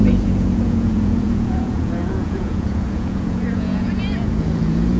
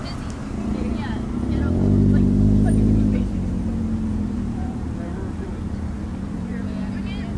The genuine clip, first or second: second